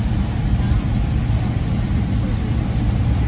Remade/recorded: recorded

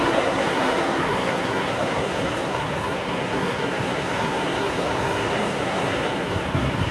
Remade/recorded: remade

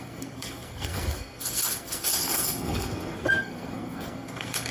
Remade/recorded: remade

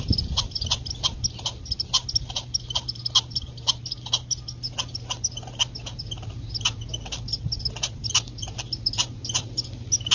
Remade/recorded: recorded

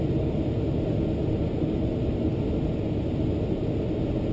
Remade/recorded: recorded